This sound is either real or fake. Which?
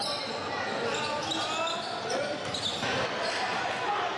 real